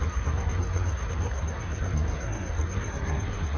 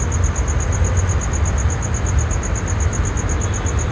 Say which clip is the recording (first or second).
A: second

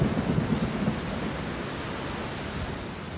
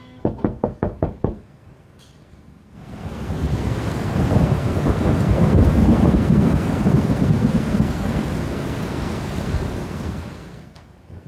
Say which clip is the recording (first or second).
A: first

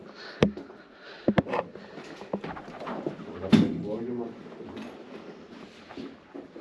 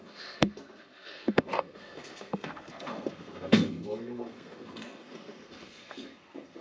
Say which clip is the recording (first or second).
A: first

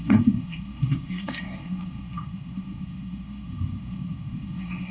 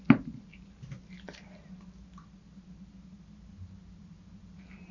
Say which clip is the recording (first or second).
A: second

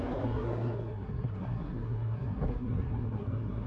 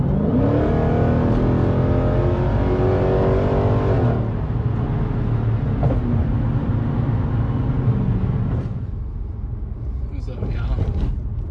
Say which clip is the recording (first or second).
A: second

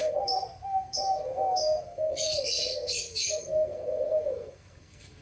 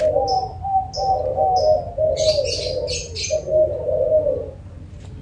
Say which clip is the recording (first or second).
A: second